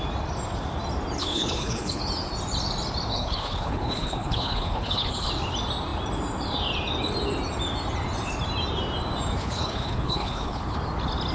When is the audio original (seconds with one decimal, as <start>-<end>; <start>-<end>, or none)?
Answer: 0.0-1.2; 2.0-3.1; 5.3-9.4; 10.8-11.3